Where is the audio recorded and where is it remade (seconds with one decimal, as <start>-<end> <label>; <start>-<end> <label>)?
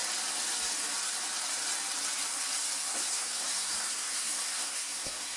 0.0-2.9 recorded; 2.9-5.4 remade